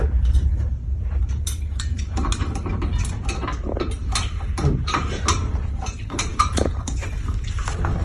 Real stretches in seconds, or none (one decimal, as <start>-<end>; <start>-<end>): 2.9-5.6